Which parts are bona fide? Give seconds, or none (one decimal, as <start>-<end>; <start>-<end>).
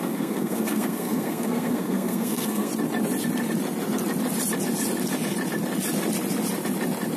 2.7-7.2